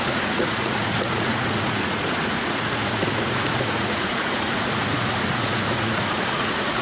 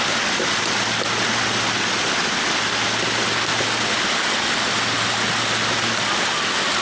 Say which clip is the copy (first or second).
first